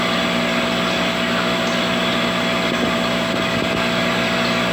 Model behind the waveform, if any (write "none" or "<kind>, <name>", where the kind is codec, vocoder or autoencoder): none